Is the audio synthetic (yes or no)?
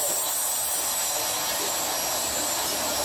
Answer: no